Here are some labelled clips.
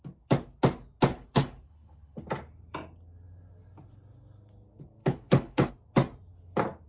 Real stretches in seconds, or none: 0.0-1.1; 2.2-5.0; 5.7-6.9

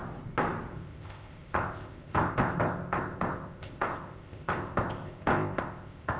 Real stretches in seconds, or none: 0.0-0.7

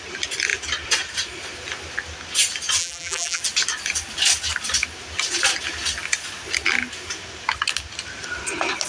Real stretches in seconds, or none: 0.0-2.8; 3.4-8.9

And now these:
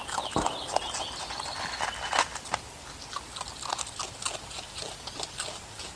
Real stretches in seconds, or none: 0.0-6.0

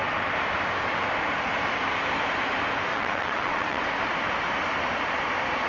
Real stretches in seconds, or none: 0.0-2.9; 3.8-5.7